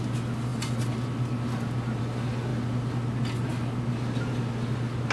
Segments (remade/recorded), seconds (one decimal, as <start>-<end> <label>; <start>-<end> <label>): 0.0-5.1 recorded